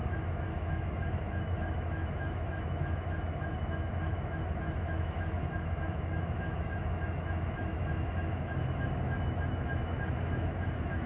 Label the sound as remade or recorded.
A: remade